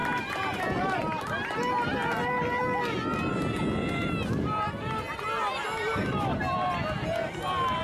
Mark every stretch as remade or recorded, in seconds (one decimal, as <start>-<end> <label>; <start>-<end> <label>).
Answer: 0.0-0.6 remade; 0.6-7.8 recorded